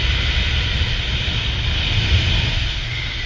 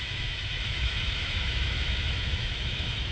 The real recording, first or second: first